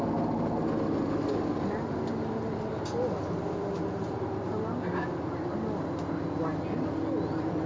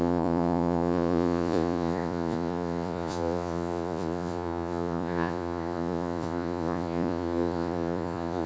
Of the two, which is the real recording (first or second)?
first